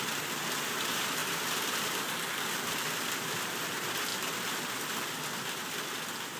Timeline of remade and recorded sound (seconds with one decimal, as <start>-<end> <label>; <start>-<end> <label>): 0.0-1.2 recorded; 1.2-3.1 remade; 3.1-6.4 recorded